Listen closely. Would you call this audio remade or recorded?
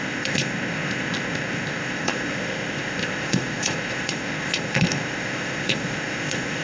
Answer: remade